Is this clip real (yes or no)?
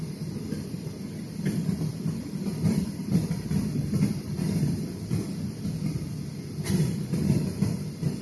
no